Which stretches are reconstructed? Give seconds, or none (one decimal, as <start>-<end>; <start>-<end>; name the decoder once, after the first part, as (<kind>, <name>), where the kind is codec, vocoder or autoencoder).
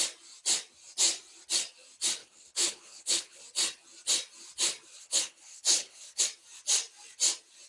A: 2.2-3.4 (codec, HILCodec); 4.9-6.2